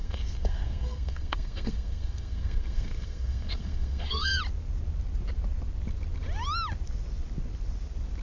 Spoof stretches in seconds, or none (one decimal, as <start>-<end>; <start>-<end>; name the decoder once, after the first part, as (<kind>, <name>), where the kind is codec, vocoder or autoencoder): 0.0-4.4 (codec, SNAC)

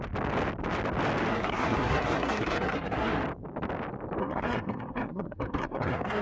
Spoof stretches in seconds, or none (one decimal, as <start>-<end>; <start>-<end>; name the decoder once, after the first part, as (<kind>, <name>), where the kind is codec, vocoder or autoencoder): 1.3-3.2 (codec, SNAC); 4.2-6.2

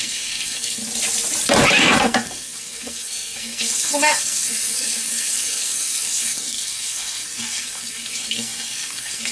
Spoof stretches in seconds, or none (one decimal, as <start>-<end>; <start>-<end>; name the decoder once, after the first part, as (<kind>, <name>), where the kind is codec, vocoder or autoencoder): 0.0-0.8 (codec, SNAC); 1.7-9.3